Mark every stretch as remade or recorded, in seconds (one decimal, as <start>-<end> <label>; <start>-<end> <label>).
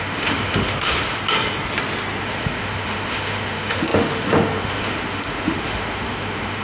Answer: 0.0-1.2 remade; 1.2-2.2 recorded; 2.2-6.6 remade